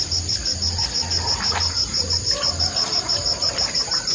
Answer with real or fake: real